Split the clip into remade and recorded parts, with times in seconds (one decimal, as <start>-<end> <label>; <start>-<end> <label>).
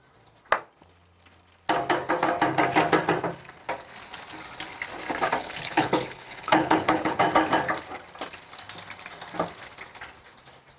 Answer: 0.0-5.4 recorded; 5.4-7.2 remade; 7.2-10.8 recorded